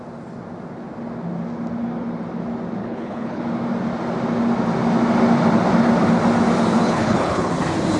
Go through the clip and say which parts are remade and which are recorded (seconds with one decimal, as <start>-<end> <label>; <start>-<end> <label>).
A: 0.0-2.8 recorded; 2.8-3.4 remade; 3.4-6.8 recorded; 6.8-7.5 remade; 7.5-8.0 recorded